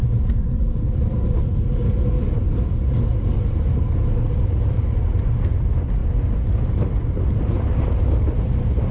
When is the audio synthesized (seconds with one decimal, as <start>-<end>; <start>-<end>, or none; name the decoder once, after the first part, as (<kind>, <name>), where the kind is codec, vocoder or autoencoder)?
0.0-1.6 (vocoder, BigVGAN v2)